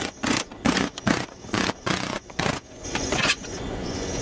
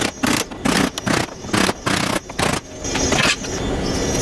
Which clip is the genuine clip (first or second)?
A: second